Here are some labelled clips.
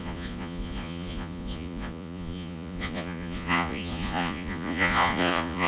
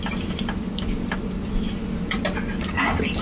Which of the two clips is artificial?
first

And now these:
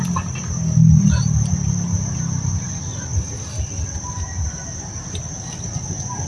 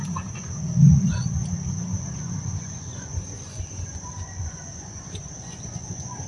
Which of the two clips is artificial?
second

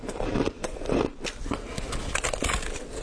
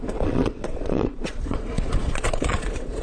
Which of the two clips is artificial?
second